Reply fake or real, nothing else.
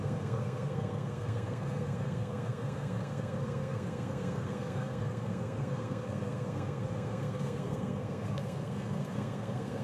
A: fake